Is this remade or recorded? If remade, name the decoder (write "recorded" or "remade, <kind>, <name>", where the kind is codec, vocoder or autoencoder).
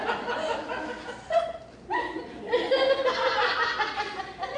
recorded